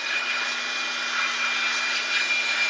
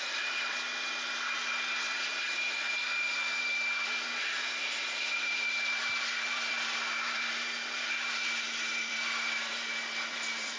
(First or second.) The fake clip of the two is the second